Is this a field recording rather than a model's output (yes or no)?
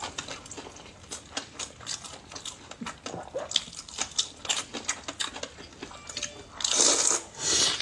yes